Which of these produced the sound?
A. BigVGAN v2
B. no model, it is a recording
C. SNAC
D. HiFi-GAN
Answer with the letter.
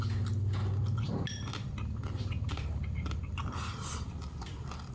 B